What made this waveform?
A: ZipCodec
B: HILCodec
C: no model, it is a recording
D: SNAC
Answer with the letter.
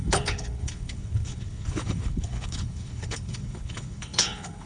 B